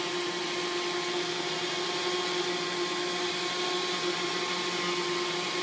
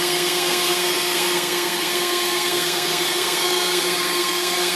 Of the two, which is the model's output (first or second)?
second